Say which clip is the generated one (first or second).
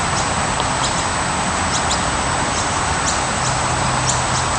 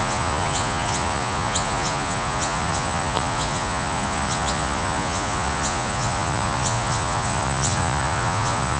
second